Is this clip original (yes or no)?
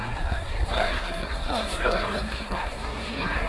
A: no